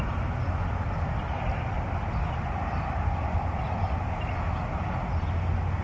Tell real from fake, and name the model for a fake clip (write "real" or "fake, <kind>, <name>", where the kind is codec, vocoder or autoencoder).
real